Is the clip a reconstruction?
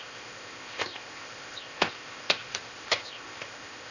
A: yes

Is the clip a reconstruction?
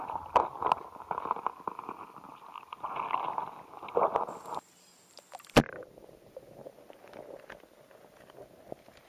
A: no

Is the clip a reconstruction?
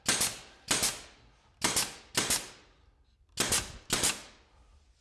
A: no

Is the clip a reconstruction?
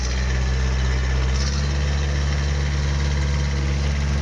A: no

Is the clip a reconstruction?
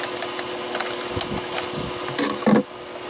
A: no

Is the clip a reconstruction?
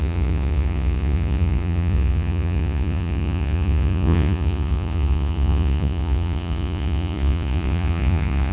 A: yes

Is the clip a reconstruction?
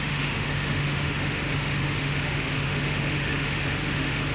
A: yes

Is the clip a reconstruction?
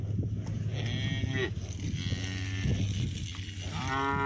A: no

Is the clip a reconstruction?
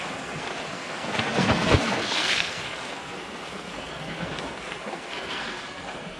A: yes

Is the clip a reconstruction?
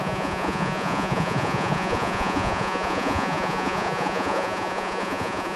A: yes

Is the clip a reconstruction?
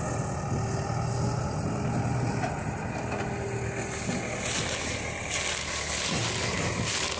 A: no